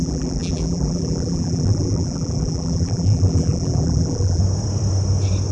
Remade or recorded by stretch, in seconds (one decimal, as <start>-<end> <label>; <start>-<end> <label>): 0.0-4.4 remade; 4.4-5.5 recorded